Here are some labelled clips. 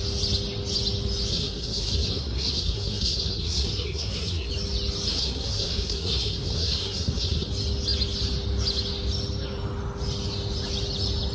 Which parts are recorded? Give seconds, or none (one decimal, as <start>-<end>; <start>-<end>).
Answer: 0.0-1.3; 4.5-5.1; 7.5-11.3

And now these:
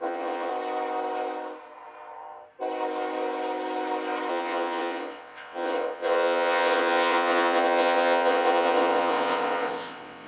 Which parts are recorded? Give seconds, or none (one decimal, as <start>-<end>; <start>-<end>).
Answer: 0.5-4.3

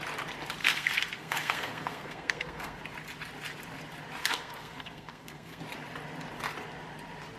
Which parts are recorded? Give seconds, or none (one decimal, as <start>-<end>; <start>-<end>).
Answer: 0.0-0.6; 2.8-4.2; 5.6-7.4

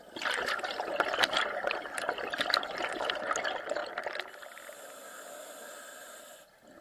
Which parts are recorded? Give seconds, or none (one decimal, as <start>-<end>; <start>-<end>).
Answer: 0.0-6.8

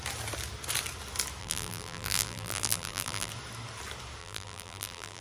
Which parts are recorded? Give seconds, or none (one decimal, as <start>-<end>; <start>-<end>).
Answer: 0.0-1.4; 3.3-4.2

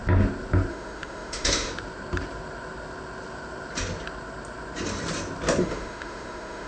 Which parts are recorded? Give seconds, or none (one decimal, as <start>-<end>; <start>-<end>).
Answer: 0.0-0.7; 1.7-5.6